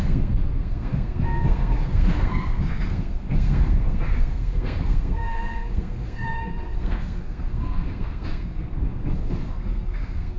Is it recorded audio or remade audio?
remade